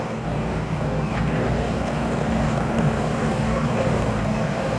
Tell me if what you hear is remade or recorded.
remade